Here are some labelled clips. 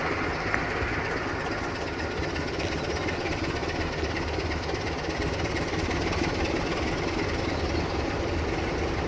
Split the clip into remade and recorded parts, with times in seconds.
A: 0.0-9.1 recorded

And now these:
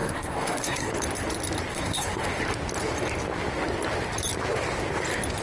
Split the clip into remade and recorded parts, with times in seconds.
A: 0.0-0.9 remade; 0.9-1.7 recorded; 1.7-2.4 remade; 2.4-5.4 recorded

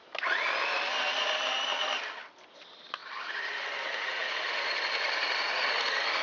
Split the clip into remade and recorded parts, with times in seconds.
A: 0.0-6.2 recorded

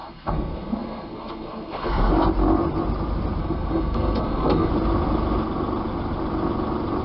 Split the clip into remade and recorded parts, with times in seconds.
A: 0.0-2.1 remade; 2.1-3.4 recorded; 3.4-4.7 remade; 4.7-7.0 recorded

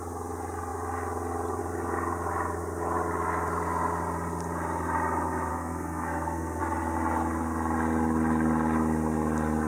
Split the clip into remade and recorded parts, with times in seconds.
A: 0.0-5.5 recorded; 5.5-6.6 remade; 6.6-9.7 recorded

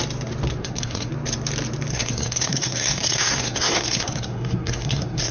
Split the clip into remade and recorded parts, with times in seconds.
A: 0.0-0.6 recorded; 0.6-1.1 remade; 1.1-1.9 recorded; 1.9-5.3 remade

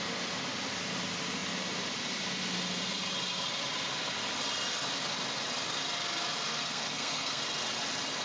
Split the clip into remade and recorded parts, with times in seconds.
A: 0.0-6.5 recorded; 6.5-7.4 remade; 7.4-8.2 recorded